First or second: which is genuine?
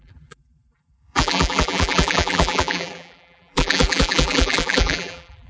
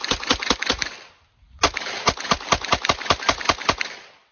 second